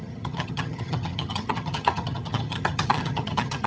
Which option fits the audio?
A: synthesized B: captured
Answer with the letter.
A